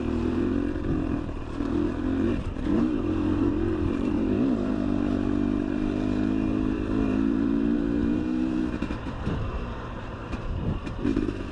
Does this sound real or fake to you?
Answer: fake